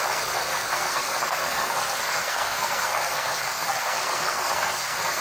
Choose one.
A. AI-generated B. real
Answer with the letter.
A